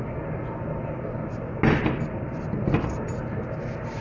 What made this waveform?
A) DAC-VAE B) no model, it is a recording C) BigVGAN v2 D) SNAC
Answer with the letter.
B